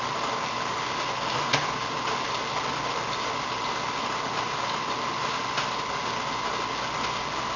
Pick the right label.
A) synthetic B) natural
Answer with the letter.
B